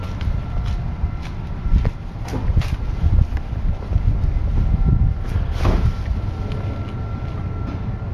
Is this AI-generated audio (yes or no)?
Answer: no